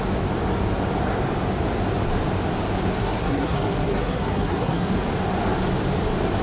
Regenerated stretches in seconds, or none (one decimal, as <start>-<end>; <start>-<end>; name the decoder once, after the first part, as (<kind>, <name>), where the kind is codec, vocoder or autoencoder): 3.0-4.9 (codec, SNAC)